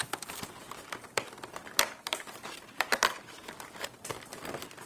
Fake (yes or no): yes